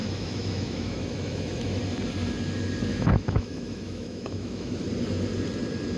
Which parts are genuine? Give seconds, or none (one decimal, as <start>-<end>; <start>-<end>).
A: 1.8-2.9; 4.8-6.0